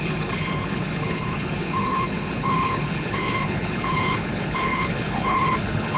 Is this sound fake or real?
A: fake